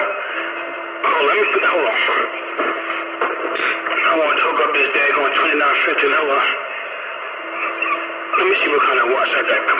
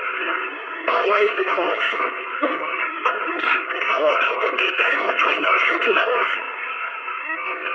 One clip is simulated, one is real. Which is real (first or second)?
first